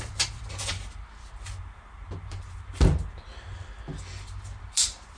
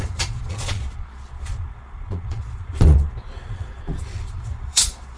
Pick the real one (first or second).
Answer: first